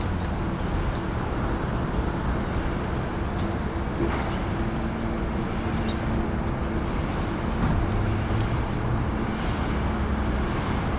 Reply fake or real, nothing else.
real